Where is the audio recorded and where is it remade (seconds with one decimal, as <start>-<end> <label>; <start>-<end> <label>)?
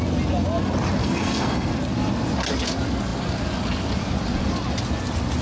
0.0-1.0 recorded; 1.0-1.7 remade; 1.7-5.4 recorded